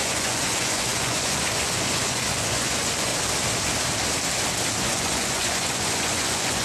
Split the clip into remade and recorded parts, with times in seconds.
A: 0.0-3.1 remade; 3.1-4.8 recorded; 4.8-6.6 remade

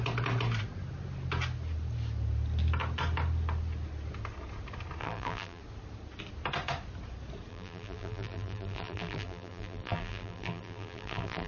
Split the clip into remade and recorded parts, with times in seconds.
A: 0.0-5.0 recorded; 5.0-5.6 remade; 5.6-7.5 recorded; 7.5-11.5 remade

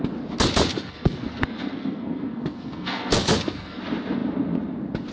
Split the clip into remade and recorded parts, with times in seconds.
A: 0.0-0.7 recorded; 0.7-3.8 remade; 3.8-5.1 recorded

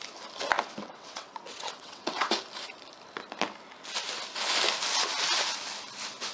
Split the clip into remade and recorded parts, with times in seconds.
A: 0.0-0.8 recorded; 0.8-2.3 remade; 2.3-6.3 recorded

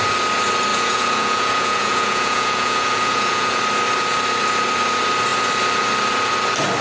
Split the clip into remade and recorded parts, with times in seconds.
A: 0.0-0.7 recorded; 0.7-3.6 remade; 3.6-6.8 recorded

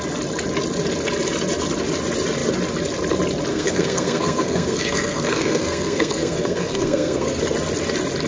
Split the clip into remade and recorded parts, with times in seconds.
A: 0.0-3.5 recorded; 3.5-7.4 remade; 7.4-8.3 recorded

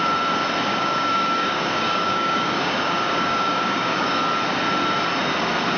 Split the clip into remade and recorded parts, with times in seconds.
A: 0.0-0.7 recorded; 0.7-4.2 remade; 4.2-5.8 recorded